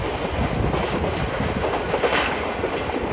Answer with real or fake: real